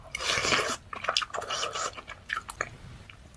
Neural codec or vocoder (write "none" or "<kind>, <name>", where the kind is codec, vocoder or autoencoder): none